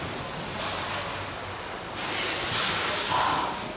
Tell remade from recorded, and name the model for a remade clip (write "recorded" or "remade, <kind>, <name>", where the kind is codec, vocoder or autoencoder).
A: recorded